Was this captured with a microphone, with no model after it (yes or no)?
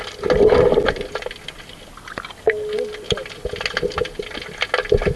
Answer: yes